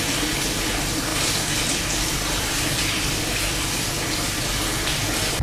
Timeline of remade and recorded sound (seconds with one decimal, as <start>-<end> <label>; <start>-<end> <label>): 0.0-1.1 recorded; 1.1-3.9 remade; 3.9-5.4 recorded